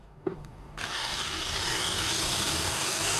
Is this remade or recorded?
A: remade